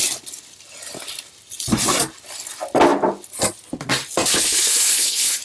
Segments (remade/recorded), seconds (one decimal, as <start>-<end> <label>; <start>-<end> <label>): 0.0-4.3 recorded; 4.3-5.4 remade